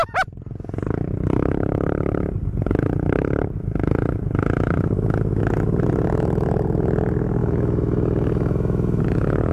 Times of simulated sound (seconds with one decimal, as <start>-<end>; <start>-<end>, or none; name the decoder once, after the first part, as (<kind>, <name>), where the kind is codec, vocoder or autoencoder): 7.4-9.0 (autoencoder, DAC-VAE)

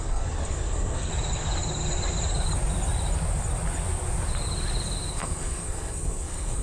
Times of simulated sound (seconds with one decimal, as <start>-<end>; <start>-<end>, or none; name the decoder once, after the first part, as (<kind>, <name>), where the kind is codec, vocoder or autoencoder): 0.0-1.1 (codec, SNAC); 5.1-6.6

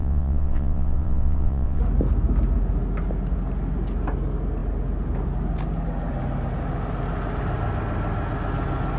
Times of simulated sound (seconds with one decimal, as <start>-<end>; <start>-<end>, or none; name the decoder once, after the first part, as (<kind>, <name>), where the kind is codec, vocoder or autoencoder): 0.0-1.8 (vocoder, WaveNeXt)

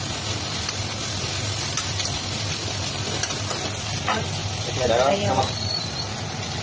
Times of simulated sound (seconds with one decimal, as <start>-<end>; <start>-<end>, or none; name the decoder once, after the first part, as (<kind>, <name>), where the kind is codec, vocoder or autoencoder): 4.4-5.8 (vocoder, BigVGAN v2)

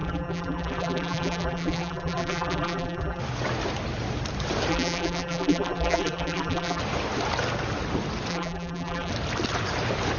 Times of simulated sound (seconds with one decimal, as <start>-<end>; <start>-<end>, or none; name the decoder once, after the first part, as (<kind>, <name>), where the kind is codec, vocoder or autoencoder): 0.0-3.2 (vocoder, BigVGAN v2); 4.7-6.8; 8.3-9.1

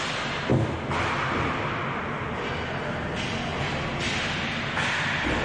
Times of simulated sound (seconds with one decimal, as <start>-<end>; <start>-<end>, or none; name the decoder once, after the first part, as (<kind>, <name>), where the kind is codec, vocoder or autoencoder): none

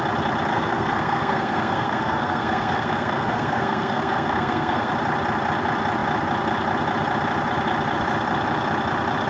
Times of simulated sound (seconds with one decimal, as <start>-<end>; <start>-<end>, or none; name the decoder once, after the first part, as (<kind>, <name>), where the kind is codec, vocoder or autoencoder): 0.5-4.9 (codec, SNAC)

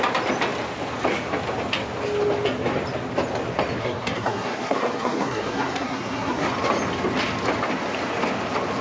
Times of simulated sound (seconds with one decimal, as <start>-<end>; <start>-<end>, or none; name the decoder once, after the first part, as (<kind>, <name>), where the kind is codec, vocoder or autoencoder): 3.8-6.5 (codec, SNAC)